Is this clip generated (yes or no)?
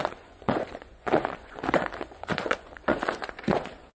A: yes